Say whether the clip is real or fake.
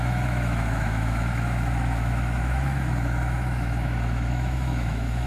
fake